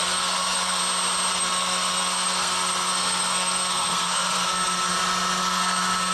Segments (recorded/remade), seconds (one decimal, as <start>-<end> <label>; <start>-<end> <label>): 0.0-0.8 remade; 0.8-1.3 recorded; 1.3-4.9 remade; 4.9-5.4 recorded; 5.4-6.1 remade